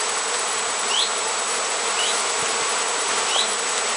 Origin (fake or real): real